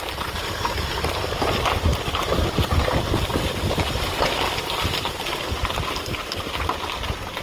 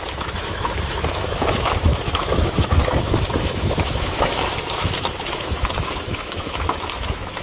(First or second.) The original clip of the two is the first